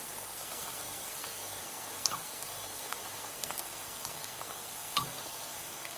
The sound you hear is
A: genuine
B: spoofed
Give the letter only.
B